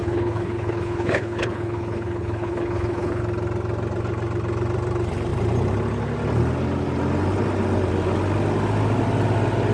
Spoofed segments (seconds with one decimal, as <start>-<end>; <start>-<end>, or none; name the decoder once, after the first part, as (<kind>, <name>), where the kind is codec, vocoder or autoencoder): 0.0-3.2 (codec, HILCodec)